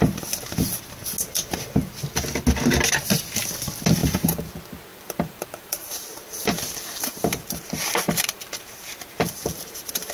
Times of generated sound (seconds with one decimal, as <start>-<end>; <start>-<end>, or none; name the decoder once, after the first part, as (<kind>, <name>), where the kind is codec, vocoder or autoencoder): 4.0-4.5 (vocoder, BigVGAN v2); 4.9-10.1